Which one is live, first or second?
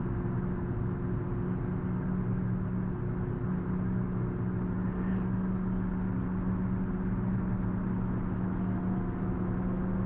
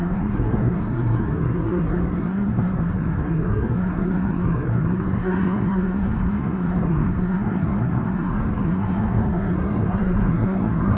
first